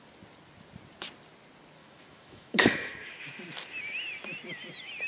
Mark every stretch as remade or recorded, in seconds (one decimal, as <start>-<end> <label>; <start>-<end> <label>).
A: 0.0-1.8 recorded; 1.8-3.2 remade; 3.2-5.1 recorded